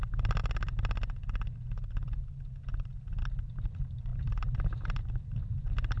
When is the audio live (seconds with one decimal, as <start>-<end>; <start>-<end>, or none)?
0.0-6.0